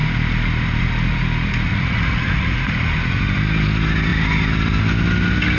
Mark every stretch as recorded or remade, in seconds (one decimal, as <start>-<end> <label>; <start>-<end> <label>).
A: 0.0-1.7 recorded; 1.7-2.7 remade; 2.7-5.6 recorded

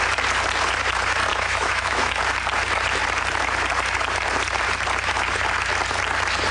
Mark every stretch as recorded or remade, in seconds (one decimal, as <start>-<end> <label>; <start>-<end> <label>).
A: 0.0-1.3 recorded; 1.3-2.2 remade; 2.2-6.5 recorded